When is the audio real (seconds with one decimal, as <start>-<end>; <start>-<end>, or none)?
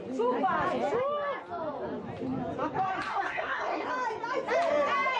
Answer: 0.0-3.1; 3.9-5.2